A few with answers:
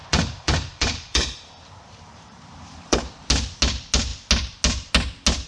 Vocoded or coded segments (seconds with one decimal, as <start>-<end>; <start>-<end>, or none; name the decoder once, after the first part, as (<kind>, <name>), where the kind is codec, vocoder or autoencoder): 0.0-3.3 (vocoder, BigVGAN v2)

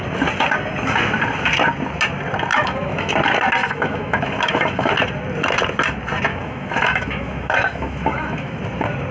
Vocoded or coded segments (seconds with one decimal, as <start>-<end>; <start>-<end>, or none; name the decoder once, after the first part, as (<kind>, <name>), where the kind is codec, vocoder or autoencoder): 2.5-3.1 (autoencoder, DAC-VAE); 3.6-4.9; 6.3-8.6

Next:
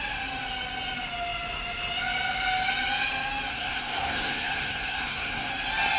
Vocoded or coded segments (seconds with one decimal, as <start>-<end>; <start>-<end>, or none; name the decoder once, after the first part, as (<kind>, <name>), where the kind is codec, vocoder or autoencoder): 3.5-5.5 (codec, SNAC)

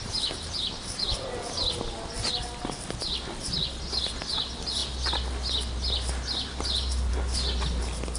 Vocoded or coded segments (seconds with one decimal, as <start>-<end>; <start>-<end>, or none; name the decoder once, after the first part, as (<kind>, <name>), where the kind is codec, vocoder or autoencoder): none

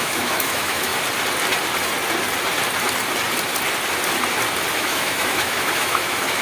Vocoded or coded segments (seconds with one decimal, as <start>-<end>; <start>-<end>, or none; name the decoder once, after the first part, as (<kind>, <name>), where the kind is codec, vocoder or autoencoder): 0.0-0.9 (autoencoder, DAC-VAE); 4.7-6.4

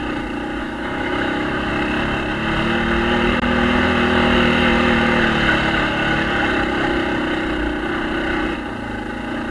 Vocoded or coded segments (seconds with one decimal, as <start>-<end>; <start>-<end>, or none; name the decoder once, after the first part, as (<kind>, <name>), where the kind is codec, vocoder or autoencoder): 0.6-1.7 (autoencoder, DAC-VAE)